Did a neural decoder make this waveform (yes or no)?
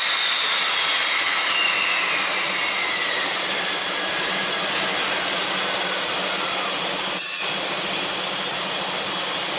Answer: no